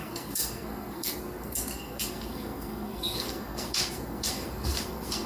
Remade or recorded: remade